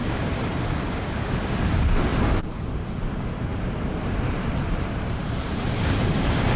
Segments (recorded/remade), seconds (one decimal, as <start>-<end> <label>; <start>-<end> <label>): 0.0-0.6 remade; 0.6-2.1 recorded; 2.1-2.8 remade; 2.8-3.5 recorded; 3.5-6.6 remade